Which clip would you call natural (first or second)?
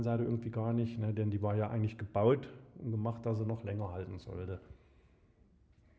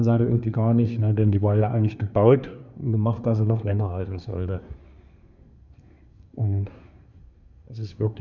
first